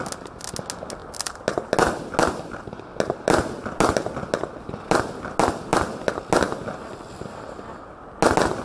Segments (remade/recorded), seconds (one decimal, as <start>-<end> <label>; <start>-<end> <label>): 0.0-8.6 recorded